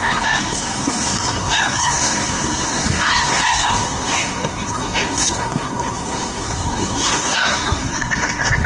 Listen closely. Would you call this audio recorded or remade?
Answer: remade